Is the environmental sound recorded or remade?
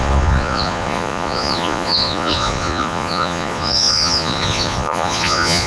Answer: remade